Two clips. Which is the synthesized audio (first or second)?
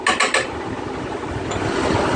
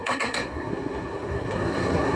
second